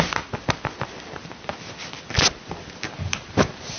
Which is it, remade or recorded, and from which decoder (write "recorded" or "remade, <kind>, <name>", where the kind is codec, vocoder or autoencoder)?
recorded